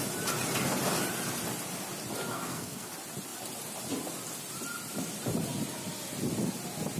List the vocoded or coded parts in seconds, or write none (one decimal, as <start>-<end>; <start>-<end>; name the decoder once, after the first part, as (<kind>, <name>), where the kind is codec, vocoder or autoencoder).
2.3-2.9 (codec, SNAC)